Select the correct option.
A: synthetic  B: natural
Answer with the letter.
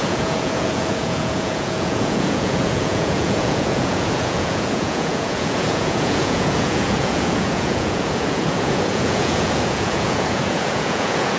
A